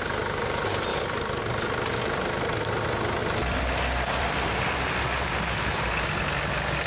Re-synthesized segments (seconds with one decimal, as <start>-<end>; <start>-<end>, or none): 0.9-1.4; 3.2-6.2